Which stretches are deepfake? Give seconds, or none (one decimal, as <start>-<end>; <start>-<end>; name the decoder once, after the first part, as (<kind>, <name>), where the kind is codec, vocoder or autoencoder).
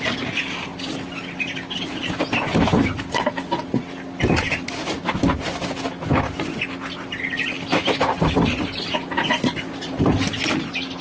none